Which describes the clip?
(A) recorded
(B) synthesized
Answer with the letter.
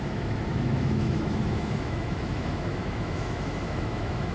B